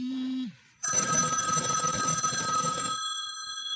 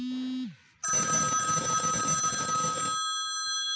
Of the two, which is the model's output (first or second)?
first